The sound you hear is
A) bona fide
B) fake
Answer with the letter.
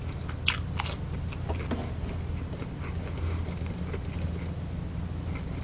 A